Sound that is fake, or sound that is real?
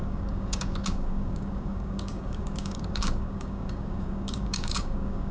fake